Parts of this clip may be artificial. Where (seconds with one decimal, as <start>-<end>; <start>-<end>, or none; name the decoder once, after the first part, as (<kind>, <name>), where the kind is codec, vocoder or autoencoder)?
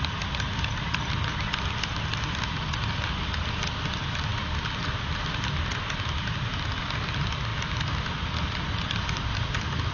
none